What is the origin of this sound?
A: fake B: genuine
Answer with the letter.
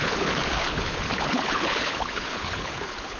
A